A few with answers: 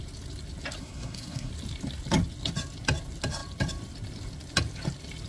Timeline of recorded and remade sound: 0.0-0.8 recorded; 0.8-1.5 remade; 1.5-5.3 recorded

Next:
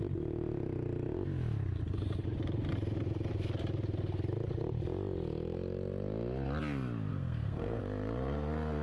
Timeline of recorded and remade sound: 0.0-7.1 recorded; 7.1-7.8 remade; 7.8-8.8 recorded

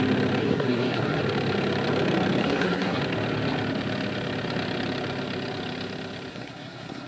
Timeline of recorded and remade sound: 0.0-0.4 recorded; 0.4-1.2 remade; 1.2-2.4 recorded; 2.4-3.0 remade; 3.0-6.3 recorded; 6.3-7.1 remade

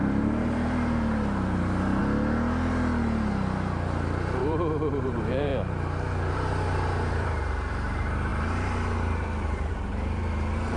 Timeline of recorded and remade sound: 0.0-2.0 remade; 2.0-4.4 recorded; 4.4-5.5 remade; 5.5-6.3 recorded; 6.3-10.8 remade

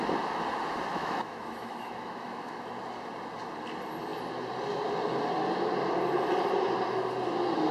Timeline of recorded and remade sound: 0.0-0.9 recorded; 0.9-2.7 remade; 2.7-7.7 recorded

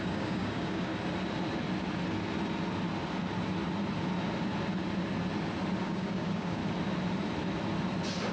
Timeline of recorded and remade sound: 0.0-0.9 remade; 0.9-5.8 recorded; 5.8-6.6 remade; 6.6-8.3 recorded

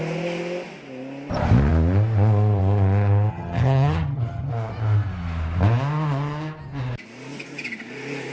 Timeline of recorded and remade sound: 0.0-3.3 recorded; 3.3-4.5 remade; 4.5-8.3 recorded